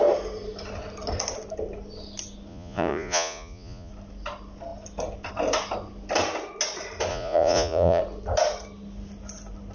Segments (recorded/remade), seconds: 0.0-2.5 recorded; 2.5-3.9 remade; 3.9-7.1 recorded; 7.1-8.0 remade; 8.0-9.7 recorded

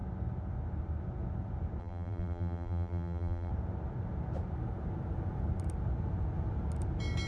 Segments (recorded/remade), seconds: 0.0-1.8 recorded; 1.8-3.5 remade; 3.5-7.3 recorded